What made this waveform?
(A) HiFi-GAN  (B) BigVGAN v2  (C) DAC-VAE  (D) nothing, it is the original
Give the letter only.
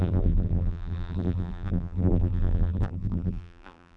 B